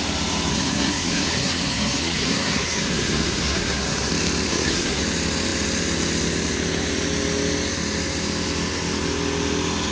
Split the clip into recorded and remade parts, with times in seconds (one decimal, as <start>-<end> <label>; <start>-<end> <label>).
0.0-0.5 recorded; 0.5-4.1 remade; 4.1-4.5 recorded; 4.5-5.0 remade; 5.0-9.9 recorded